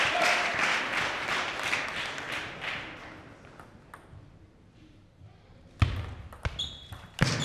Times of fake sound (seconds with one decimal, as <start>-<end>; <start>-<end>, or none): 0.5-3.7